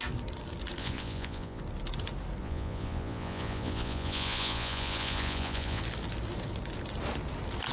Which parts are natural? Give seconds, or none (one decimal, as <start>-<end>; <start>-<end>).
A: 0.0-0.8; 1.6-2.4; 5.8-7.7